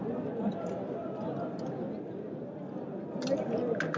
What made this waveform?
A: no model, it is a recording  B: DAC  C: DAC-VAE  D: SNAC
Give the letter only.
A